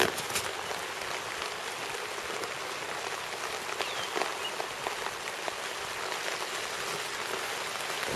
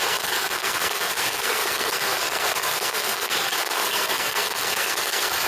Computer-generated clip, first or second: second